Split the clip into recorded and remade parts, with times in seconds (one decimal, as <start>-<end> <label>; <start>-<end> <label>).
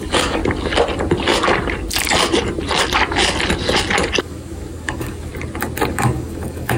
0.0-0.4 remade; 0.4-4.2 recorded; 4.2-5.3 remade; 5.3-5.9 recorded; 5.9-6.8 remade